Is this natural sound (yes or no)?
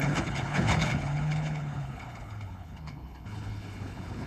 no